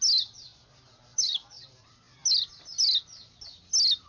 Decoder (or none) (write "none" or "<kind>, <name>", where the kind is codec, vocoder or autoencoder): none